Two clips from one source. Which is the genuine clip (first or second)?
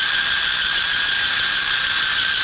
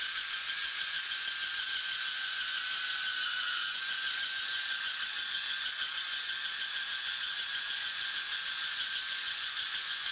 first